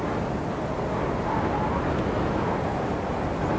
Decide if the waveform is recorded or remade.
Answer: recorded